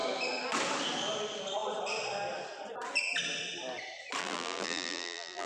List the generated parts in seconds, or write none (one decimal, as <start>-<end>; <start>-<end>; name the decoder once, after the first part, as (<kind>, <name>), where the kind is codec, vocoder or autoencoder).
4.2-5.5 (vocoder, BigVGAN v2)